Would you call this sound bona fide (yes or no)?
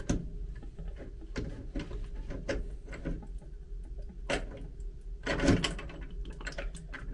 yes